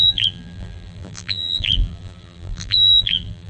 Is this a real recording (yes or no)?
no